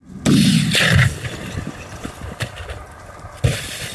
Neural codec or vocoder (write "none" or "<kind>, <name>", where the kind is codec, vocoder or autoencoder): none